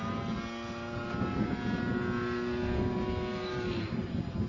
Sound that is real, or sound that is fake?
real